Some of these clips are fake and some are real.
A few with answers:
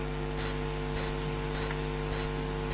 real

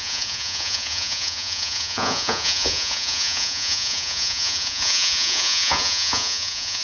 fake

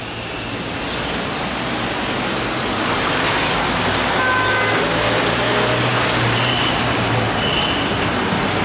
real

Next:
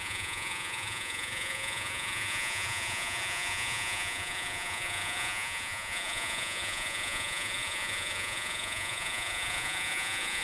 fake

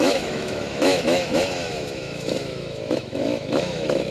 fake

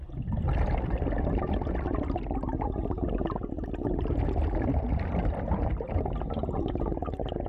real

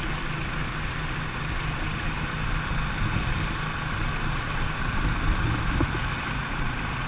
real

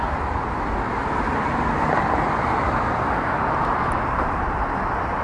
real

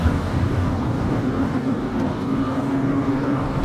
fake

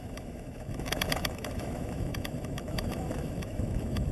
fake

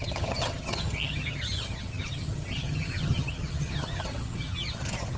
fake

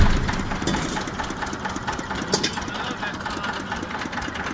real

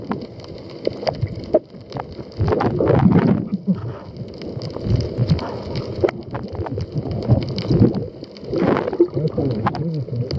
real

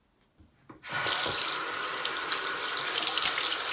real